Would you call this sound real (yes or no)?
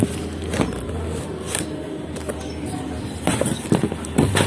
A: yes